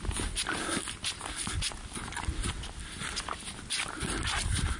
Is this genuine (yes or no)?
yes